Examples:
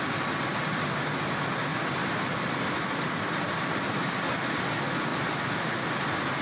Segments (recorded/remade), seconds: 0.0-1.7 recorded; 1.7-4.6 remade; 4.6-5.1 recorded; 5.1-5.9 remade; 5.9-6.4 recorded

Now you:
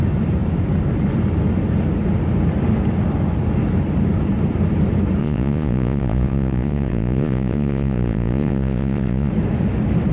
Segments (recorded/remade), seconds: 0.0-5.2 recorded; 5.2-9.3 remade; 9.3-10.1 recorded

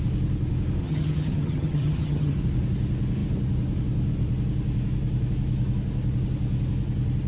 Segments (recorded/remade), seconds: 0.0-0.8 recorded; 0.8-2.4 remade; 2.4-7.3 recorded

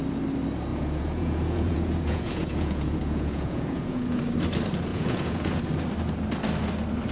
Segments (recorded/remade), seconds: 0.0-0.7 recorded; 0.7-4.2 remade; 4.2-4.9 recorded; 4.9-5.6 remade; 5.6-7.1 recorded

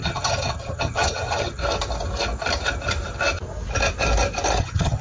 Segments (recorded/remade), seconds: 0.0-1.6 remade; 1.6-4.6 recorded; 4.6-5.0 remade

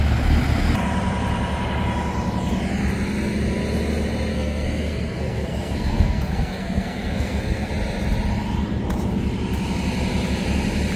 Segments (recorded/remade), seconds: 0.0-4.3 recorded; 4.3-7.7 remade; 7.7-11.0 recorded

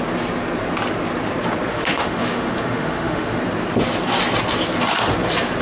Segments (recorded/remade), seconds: 0.0-1.7 recorded; 1.7-3.4 remade; 3.4-5.6 recorded

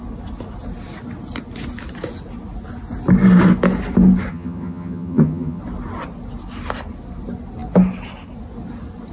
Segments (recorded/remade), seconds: 0.0-4.3 recorded; 4.3-5.6 remade; 5.6-9.1 recorded